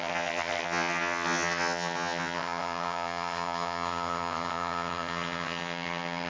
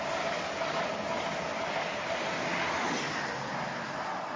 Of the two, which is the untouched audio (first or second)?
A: second